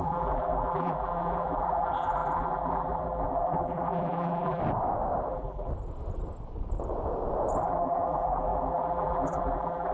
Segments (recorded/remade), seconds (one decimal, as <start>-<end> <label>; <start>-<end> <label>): 0.0-4.6 remade; 4.6-5.3 recorded; 5.3-5.7 remade; 5.7-7.6 recorded; 7.6-9.9 remade